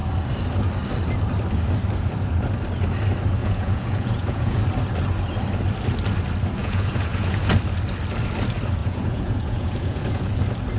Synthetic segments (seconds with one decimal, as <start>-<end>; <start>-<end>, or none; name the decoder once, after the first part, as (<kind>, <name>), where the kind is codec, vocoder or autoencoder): 3.4-4.6 (vocoder, Vocos); 6.6-7.5; 8.8-10.3

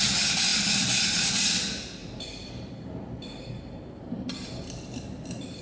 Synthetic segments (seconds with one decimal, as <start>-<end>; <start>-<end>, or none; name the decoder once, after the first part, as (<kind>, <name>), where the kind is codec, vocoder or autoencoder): 0.5-1.3 (vocoder, BigVGAN v2); 2.0-5.6